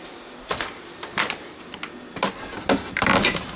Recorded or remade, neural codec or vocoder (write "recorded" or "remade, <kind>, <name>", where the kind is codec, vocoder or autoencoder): recorded